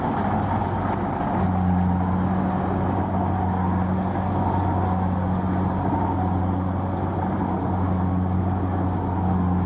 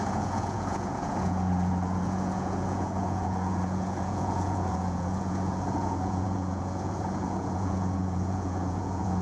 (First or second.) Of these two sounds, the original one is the first